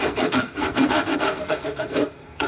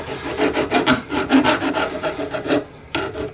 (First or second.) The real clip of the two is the second